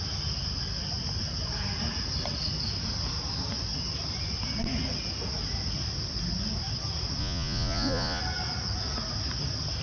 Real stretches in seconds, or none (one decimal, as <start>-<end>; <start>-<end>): 0.0-7.2; 8.2-9.8